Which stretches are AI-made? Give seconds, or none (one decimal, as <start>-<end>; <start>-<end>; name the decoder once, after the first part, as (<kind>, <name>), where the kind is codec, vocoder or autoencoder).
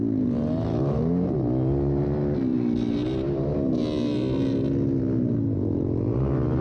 none